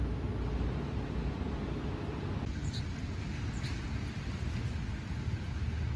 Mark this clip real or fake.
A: real